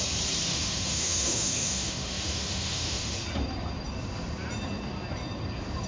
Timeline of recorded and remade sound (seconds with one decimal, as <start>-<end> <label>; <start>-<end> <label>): 0.0-0.5 recorded; 0.5-3.1 remade; 3.1-5.9 recorded